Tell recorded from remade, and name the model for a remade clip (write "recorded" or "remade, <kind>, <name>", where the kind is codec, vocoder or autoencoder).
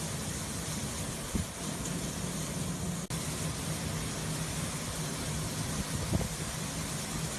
recorded